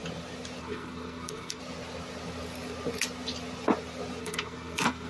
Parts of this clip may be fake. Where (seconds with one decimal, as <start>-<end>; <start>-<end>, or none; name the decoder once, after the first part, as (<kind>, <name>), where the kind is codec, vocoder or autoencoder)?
0.6-1.6 (codec, SNAC); 4.2-5.1